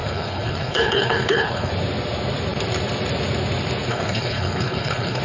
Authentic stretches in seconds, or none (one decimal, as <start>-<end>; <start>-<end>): 1.7-3.9